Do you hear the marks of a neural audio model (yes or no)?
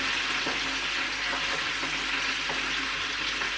no